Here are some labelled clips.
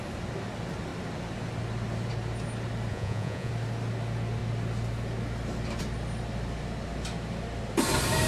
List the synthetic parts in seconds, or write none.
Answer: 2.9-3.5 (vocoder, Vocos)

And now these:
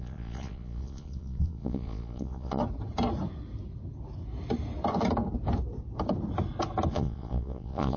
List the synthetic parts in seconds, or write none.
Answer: 0.0-2.6 (vocoder, Vocos); 6.9-8.0

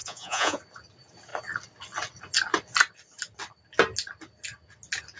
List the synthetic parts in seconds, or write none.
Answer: 0.0-0.6 (vocoder, Vocos)

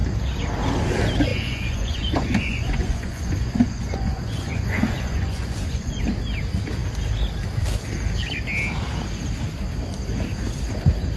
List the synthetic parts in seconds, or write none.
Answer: 1.3-6.0 (vocoder, Vocos)

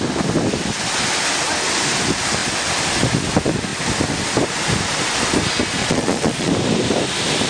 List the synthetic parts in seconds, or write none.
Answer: 5.8-6.5 (vocoder, Vocos)

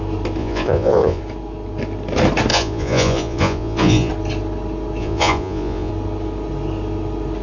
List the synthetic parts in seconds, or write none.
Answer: 0.4-1.2 (vocoder, Vocos); 2.5-4.1; 5.0-5.9

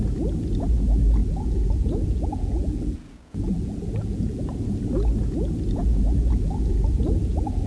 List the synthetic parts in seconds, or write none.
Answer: 1.2-4.4 (vocoder, Vocos); 5.8-7.7

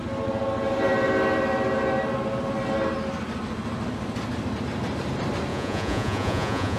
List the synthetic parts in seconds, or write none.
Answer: 5.5-6.8 (vocoder, Vocos)